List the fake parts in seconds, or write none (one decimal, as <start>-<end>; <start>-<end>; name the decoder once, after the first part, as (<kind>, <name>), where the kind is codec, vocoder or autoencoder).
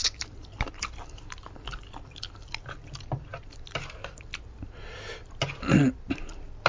none